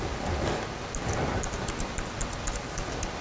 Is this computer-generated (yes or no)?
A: no